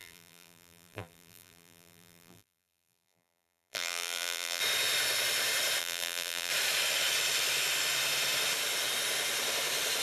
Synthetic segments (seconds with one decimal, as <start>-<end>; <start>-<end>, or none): 0.0-4.6; 5.8-6.5